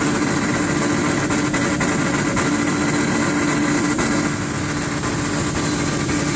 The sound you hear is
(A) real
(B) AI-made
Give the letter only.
A